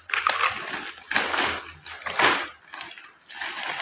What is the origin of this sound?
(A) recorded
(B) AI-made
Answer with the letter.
A